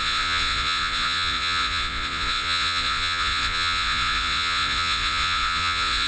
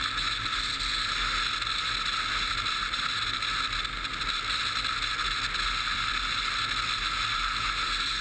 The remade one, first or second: first